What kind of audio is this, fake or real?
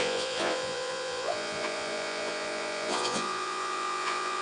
fake